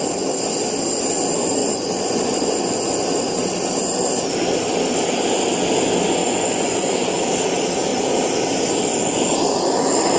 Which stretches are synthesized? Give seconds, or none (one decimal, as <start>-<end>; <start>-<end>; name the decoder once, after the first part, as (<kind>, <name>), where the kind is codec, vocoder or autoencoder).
1.6-2.9 (vocoder, Vocos); 6.2-7.2